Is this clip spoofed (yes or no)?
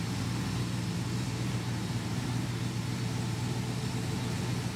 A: no